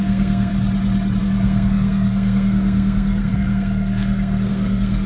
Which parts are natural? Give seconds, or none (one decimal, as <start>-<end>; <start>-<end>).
0.5-1.2